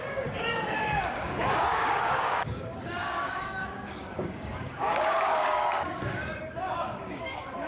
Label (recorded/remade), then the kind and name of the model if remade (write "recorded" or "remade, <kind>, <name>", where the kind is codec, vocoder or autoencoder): remade, codec, DAC